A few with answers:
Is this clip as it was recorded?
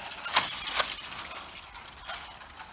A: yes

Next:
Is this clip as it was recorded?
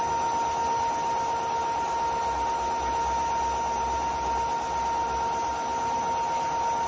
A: yes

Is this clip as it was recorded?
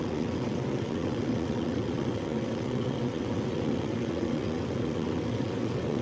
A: no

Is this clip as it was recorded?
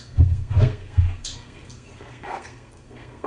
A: no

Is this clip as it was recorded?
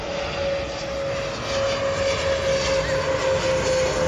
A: yes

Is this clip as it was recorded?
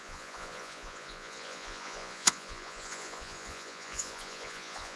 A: no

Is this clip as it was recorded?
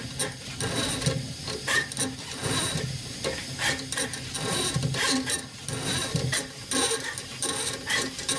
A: yes